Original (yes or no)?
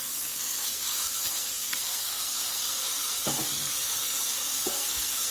no